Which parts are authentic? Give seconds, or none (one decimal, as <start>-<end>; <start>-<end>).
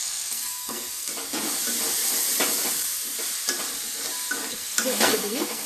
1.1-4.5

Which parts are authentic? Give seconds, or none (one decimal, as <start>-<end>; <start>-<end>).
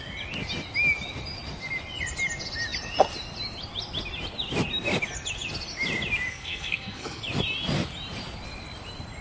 0.0-6.3; 7.2-9.2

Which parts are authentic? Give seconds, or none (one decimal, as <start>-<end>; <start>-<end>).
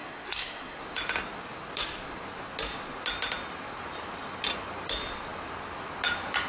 0.8-6.5